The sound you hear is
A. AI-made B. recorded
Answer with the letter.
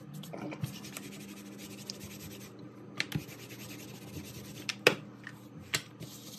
B